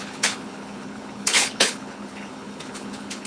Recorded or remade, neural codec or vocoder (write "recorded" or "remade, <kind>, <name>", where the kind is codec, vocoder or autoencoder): remade, codec, HILCodec